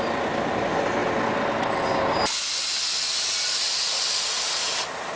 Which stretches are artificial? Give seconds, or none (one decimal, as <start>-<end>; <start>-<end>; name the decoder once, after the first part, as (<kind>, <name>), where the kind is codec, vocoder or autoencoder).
none